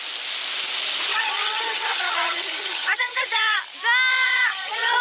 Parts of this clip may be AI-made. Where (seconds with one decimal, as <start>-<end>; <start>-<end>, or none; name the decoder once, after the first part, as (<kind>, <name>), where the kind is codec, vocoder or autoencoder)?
1.1-3.6 (vocoder, HiFi-GAN); 4.1-5.0

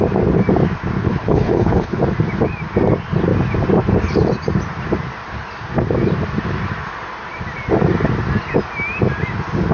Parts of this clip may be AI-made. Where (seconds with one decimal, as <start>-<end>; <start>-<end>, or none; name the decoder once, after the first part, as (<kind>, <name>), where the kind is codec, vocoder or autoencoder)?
1.0-2.0 (codec, HILCodec)

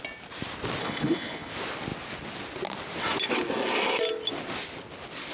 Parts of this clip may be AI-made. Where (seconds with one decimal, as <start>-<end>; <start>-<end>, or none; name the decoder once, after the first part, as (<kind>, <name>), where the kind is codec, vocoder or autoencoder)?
0.8-1.5 (codec, HILCodec)